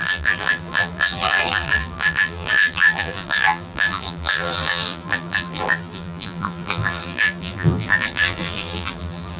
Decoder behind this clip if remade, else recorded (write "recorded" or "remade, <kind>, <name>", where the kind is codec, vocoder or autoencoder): remade, vocoder, BigVGAN v2